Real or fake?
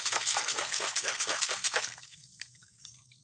fake